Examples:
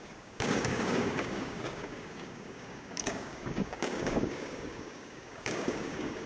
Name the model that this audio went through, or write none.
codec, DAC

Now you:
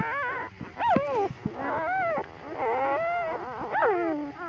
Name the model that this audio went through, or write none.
none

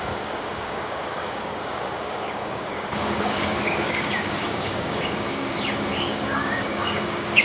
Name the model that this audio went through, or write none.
codec, DAC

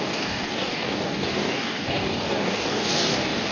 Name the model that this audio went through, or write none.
codec, DAC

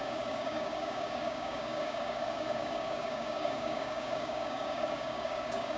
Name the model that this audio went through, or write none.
codec, DAC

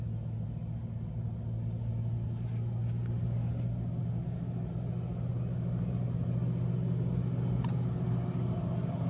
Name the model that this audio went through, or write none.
none